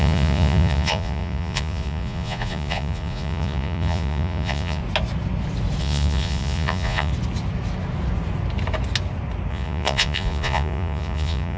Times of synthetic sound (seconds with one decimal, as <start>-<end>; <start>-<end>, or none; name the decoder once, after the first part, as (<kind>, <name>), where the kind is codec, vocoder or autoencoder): 0.0-4.8 (vocoder, Vocos); 5.8-7.1; 9.5-11.6